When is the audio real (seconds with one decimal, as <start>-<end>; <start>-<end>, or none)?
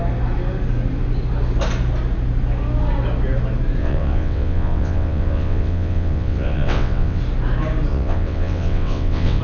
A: 0.0-3.8; 7.2-7.9